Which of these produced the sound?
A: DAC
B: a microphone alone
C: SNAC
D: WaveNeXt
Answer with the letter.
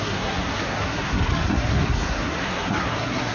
C